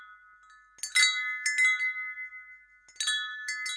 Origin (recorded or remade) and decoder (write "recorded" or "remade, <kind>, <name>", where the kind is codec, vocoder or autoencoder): recorded